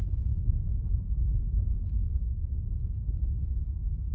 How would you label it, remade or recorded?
remade